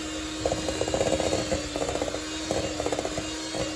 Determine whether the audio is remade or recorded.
recorded